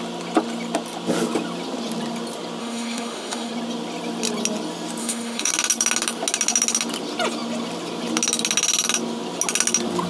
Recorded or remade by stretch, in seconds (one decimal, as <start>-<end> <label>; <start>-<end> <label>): 0.0-2.6 recorded; 2.6-3.5 remade; 3.5-5.0 recorded; 5.0-5.5 remade; 5.5-10.1 recorded

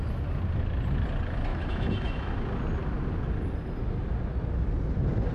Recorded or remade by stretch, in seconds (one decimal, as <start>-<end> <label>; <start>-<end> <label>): 0.0-1.5 recorded; 1.5-2.3 remade; 2.3-5.3 recorded

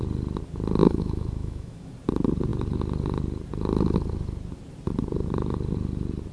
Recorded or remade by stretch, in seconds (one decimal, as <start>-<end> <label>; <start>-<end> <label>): 0.0-0.8 recorded; 0.8-1.9 remade; 1.9-6.3 recorded

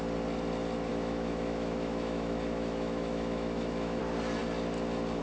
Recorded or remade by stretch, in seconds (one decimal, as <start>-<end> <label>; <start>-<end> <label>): 0.0-0.9 recorded; 0.9-4.0 remade; 4.0-5.2 recorded

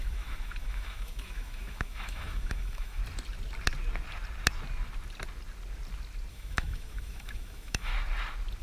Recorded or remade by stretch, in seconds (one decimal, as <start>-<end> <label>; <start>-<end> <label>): 0.0-3.0 remade; 3.0-6.3 recorded; 6.3-7.9 remade; 7.9-8.6 recorded

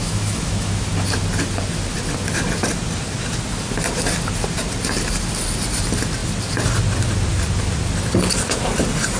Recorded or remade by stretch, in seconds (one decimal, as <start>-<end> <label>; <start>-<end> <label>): 0.0-0.9 remade; 0.9-9.2 recorded